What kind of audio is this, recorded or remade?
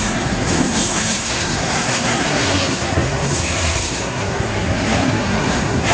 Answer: remade